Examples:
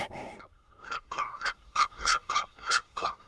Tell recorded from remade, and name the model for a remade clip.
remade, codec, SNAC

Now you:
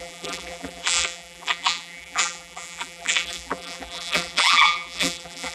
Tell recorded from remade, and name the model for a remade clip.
remade, vocoder, BigVGAN v2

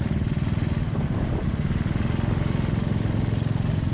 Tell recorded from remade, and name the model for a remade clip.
recorded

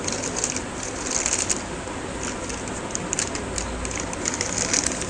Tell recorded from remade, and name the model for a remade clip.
recorded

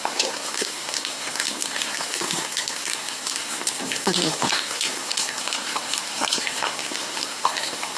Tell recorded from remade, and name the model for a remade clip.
remade, codec, SNAC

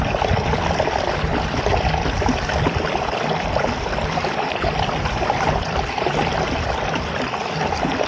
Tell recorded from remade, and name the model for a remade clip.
recorded